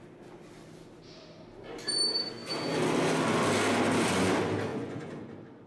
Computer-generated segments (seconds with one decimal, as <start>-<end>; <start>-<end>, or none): 4.7-5.3